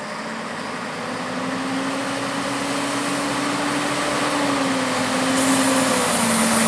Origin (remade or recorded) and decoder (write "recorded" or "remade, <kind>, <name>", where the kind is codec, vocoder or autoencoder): recorded